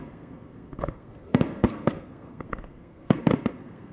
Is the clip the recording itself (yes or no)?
no